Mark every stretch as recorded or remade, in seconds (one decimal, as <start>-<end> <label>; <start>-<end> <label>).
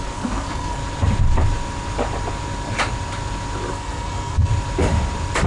0.0-0.8 remade; 0.8-3.7 recorded; 3.7-4.5 remade; 4.5-5.5 recorded